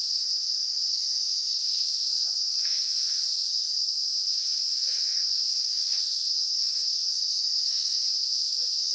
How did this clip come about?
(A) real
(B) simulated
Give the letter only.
B